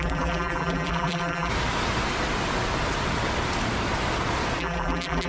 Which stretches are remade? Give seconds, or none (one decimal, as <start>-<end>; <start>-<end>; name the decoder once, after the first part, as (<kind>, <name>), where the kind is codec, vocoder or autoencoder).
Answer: 0.0-1.5 (vocoder, BigVGAN v2); 4.6-5.3